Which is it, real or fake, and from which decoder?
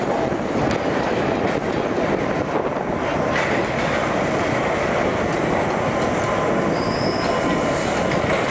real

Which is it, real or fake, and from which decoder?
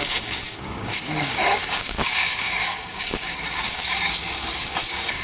fake, codec, DAC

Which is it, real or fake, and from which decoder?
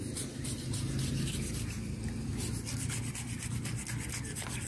real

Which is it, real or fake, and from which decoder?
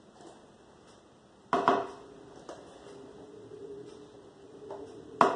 real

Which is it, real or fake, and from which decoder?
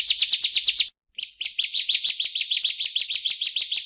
real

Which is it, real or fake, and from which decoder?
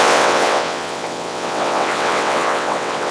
fake, vocoder, WaveNeXt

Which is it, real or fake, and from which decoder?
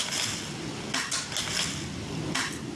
real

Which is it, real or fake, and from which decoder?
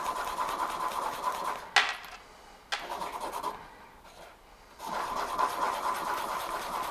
real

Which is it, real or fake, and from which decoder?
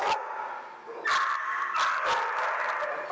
real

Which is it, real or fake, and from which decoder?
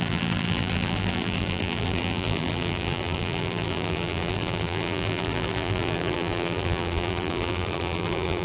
fake, vocoder, BigVGAN v2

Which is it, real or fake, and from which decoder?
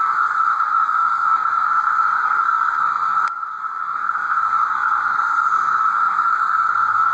fake, codec, SNAC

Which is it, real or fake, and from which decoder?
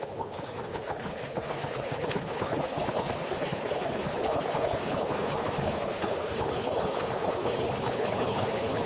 fake, codec, HILCodec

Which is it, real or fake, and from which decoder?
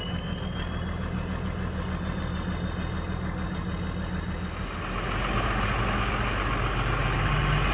real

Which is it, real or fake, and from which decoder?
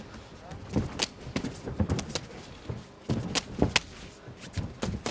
real